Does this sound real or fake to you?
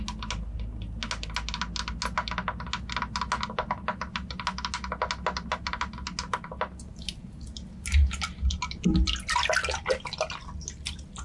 real